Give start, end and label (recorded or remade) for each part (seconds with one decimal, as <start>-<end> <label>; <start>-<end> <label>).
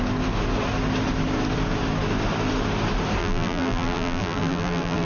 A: 0.0-3.2 recorded; 3.2-5.1 remade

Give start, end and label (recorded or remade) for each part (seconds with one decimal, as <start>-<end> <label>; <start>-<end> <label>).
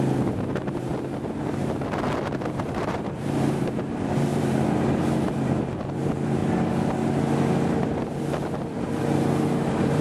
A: 0.0-0.9 remade; 0.9-2.5 recorded; 2.5-6.4 remade; 6.4-8.5 recorded; 8.5-10.0 remade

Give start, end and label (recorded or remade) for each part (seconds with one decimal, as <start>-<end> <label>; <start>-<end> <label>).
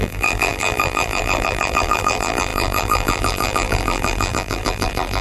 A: 0.0-5.2 remade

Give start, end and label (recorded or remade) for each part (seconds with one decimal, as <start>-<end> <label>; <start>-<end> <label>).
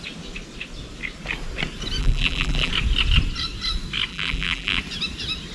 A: 0.0-2.0 recorded; 2.0-2.7 remade; 2.7-4.1 recorded; 4.1-4.8 remade; 4.8-5.5 recorded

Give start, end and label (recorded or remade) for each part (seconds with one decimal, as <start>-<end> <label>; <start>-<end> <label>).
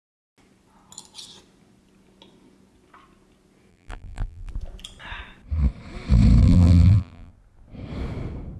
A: 0.0-3.7 recorded; 3.7-4.5 remade; 4.5-6.4 recorded; 6.4-7.3 remade; 7.3-8.6 recorded